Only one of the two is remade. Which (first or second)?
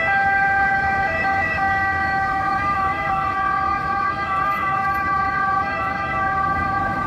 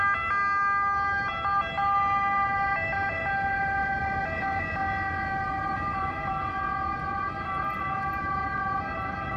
first